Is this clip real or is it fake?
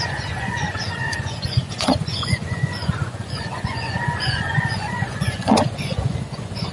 fake